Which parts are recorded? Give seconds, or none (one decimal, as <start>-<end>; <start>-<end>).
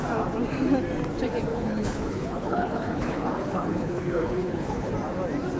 0.0-1.5; 4.9-5.6